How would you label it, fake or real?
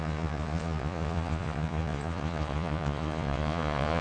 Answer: fake